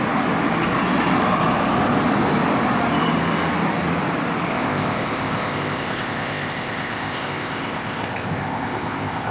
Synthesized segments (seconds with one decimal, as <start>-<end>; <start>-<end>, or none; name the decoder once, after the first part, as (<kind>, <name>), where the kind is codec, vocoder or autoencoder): 4.5-9.3 (codec, ZipCodec)